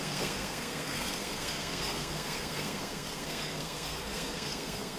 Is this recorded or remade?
remade